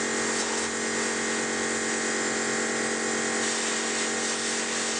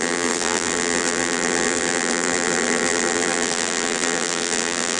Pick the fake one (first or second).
second